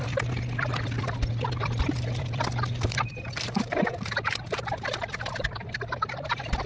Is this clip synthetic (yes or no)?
yes